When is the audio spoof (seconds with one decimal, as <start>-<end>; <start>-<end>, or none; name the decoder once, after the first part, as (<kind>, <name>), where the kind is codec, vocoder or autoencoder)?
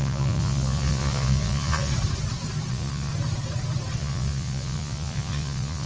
0.0-1.9 (vocoder, Vocos); 2.7-3.1; 4.0-5.9